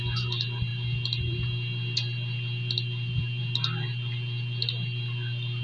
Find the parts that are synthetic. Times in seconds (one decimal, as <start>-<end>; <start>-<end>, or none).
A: none